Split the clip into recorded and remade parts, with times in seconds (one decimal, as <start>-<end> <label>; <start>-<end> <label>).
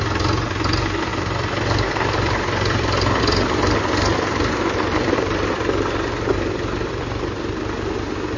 0.0-1.1 recorded; 1.1-3.2 remade; 3.2-4.1 recorded; 4.1-7.5 remade; 7.5-8.4 recorded